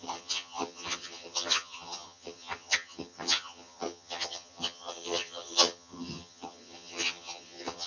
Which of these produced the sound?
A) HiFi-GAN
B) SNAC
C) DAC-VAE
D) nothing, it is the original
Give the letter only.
A